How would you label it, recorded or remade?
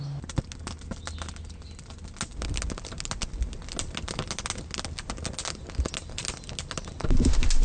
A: recorded